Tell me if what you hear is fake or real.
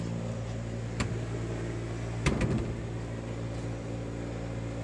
real